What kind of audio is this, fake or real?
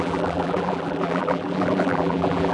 fake